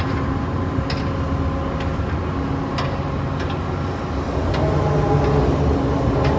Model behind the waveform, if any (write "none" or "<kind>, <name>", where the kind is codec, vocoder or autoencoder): none